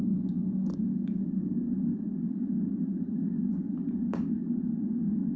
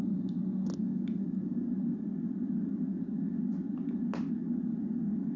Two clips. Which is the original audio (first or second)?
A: second